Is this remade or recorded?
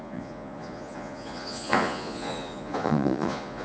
remade